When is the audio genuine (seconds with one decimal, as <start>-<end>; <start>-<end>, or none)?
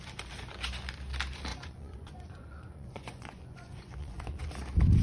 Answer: 0.0-1.5; 4.5-5.0